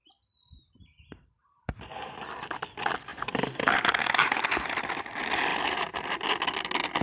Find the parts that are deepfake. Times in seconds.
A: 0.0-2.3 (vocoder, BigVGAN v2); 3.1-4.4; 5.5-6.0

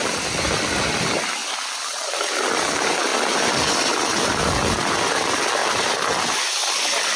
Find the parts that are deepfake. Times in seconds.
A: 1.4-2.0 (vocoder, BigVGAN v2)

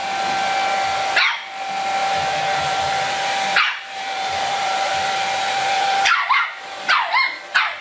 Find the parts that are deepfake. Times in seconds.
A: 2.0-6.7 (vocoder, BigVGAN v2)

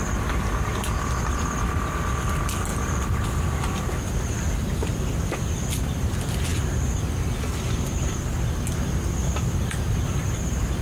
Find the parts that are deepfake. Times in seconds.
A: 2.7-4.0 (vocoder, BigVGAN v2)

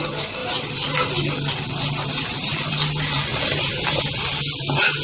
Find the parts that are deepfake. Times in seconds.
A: 2.1-2.7 (vocoder, BigVGAN v2); 3.3-4.0

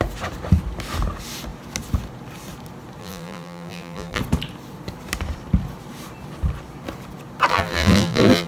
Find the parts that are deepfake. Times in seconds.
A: 3.0-4.2 (vocoder, BigVGAN v2); 7.5-8.5

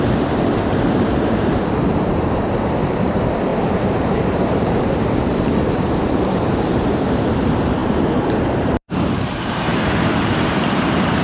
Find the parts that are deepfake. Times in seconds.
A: 0.0-11.2 (vocoder, BigVGAN v2)